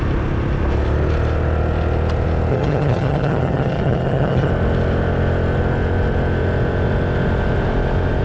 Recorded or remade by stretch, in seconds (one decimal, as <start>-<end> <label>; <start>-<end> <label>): 0.0-2.5 recorded; 2.5-4.5 remade; 4.5-8.2 recorded